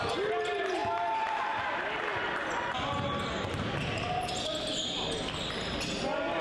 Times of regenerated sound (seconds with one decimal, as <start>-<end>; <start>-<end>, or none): none